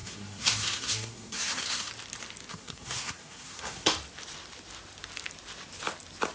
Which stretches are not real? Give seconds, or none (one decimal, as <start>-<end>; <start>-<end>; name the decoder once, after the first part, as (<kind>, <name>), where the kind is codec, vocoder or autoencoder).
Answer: 0.0-1.9 (codec, SNAC); 2.5-3.9